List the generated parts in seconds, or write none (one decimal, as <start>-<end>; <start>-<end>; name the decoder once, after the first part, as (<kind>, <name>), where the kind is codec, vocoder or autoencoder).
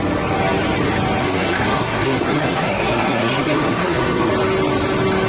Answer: 1.2-4.3 (codec, SNAC)